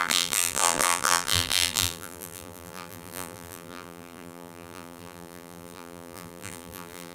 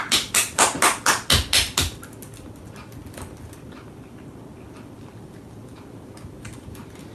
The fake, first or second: first